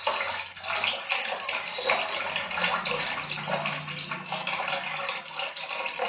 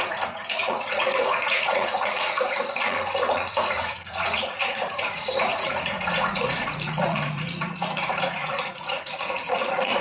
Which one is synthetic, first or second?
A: second